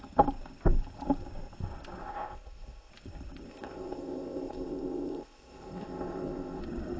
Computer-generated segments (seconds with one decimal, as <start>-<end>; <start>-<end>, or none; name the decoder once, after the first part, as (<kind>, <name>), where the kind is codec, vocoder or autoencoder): 2.0-2.9 (codec, ZipCodec); 3.5-6.6